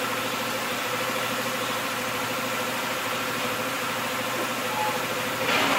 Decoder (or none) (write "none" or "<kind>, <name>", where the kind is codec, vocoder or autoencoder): none